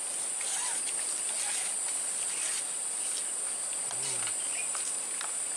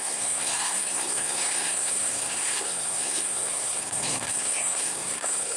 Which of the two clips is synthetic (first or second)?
second